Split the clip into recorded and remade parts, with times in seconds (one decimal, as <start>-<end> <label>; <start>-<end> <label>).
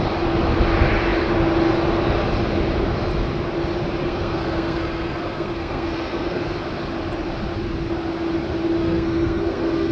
0.0-4.0 recorded; 4.0-6.4 remade; 6.4-8.8 recorded; 8.8-9.9 remade